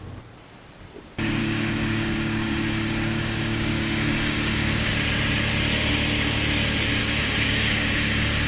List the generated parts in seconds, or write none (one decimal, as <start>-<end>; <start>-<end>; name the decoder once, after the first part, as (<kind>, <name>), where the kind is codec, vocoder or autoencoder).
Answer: 1.4-4.9 (codec, DAC); 7.0-8.5